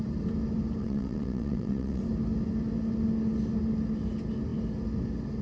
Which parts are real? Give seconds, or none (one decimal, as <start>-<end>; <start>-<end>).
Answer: 0.0-0.8; 2.0-5.4